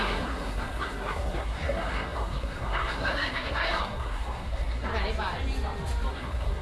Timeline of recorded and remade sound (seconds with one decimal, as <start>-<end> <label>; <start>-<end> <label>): 0.0-4.9 remade; 4.9-6.1 recorded; 6.1-6.6 remade